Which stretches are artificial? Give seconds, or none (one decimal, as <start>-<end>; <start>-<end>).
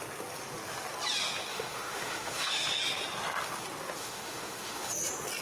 1.5-2.8; 4.0-4.9